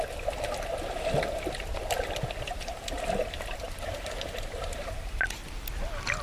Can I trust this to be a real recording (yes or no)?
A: yes